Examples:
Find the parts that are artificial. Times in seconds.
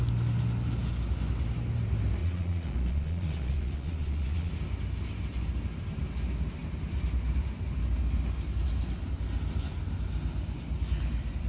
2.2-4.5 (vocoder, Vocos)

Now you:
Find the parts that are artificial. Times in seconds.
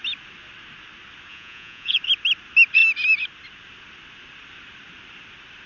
1.3-2.0 (vocoder, Vocos)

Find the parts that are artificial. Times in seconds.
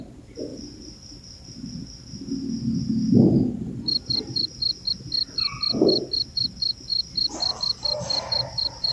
0.5-4.9 (vocoder, BigVGAN v2); 6.9-8.9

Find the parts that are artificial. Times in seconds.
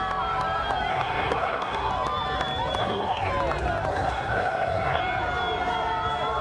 0.9-1.9 (codec, SNAC); 2.8-3.3; 3.9-5.0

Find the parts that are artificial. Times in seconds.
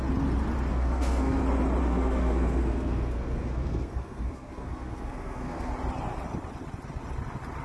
0.7-1.4 (codec, SNAC); 1.8-5.7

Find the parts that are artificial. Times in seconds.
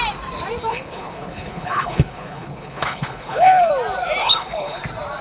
0.7-3.7 (codec, HILCodec); 4.2-4.8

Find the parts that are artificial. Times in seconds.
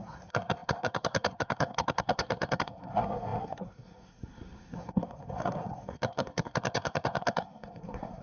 0.0-8.2 (codec, SNAC)